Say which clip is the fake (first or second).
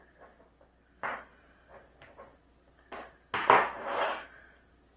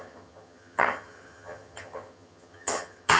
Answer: second